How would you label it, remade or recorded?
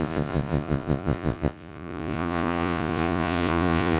remade